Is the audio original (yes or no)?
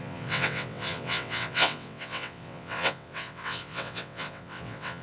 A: no